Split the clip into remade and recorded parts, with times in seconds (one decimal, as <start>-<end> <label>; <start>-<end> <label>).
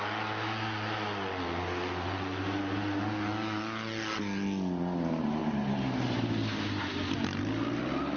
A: 0.0-8.2 recorded